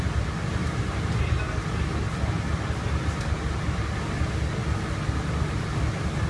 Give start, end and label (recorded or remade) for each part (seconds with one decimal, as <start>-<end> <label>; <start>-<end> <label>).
0.0-0.6 recorded; 0.6-1.4 remade; 1.4-6.3 recorded